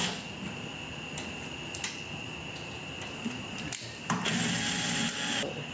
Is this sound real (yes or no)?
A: yes